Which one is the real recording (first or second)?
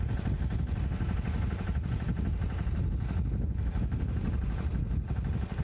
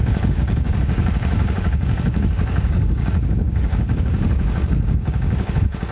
first